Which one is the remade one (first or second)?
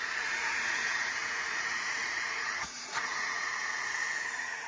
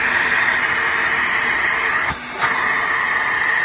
first